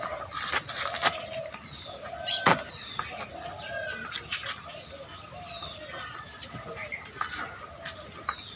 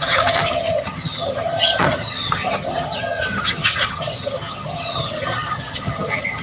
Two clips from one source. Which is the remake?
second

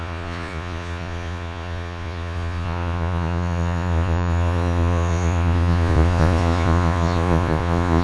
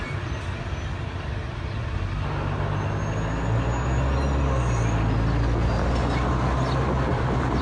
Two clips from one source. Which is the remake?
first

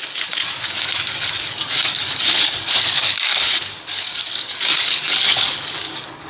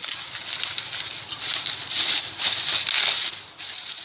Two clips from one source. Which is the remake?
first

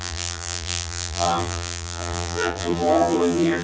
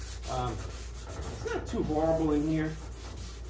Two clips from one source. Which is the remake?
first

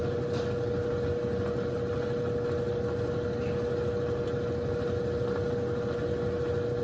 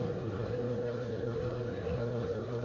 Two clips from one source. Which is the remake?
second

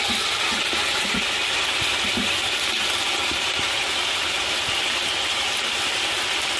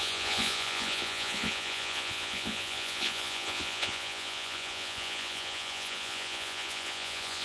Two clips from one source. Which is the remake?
second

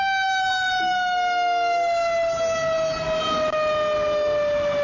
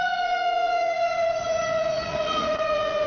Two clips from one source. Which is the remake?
second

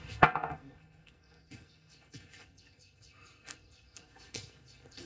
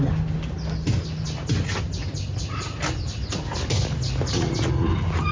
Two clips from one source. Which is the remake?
first